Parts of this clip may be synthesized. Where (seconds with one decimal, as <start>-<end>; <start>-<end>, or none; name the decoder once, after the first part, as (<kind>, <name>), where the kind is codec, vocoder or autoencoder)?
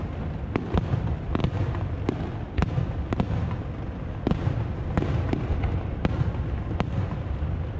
none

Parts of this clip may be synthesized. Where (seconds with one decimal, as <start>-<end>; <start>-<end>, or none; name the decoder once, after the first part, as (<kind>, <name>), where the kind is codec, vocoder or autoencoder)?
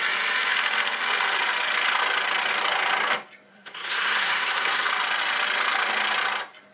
3.5-4.9 (codec, SNAC)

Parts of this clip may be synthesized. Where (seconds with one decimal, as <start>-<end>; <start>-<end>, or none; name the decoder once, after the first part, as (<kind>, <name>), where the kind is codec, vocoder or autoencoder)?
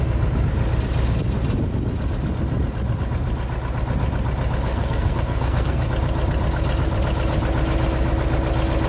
4.7-5.9 (codec, SNAC)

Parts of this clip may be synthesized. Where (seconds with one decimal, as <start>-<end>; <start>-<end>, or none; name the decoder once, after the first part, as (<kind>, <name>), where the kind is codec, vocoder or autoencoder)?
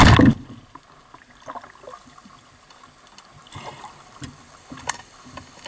none